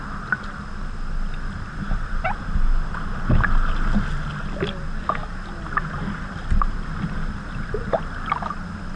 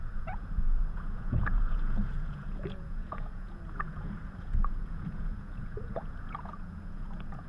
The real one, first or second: first